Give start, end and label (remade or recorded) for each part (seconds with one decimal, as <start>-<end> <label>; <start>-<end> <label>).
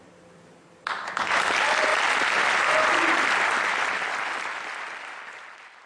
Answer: 0.0-5.9 recorded